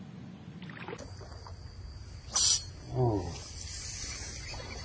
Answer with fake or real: real